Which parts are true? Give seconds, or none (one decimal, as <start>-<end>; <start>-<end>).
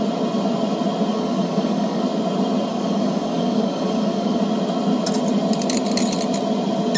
0.0-1.1; 2.0-2.7; 4.4-7.0